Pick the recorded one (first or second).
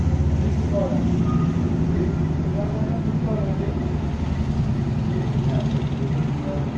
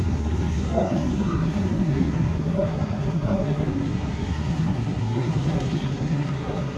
first